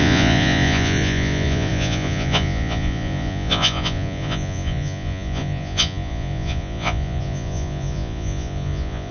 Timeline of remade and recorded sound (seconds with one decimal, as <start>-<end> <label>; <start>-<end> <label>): 0.0-9.1 remade